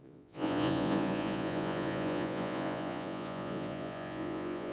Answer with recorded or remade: remade